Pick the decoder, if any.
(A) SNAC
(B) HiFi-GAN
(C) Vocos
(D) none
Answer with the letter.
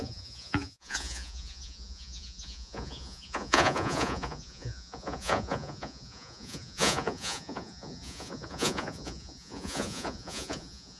C